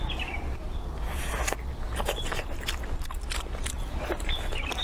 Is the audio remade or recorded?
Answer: recorded